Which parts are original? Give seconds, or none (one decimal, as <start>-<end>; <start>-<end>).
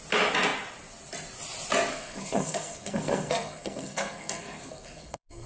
0.0-1.9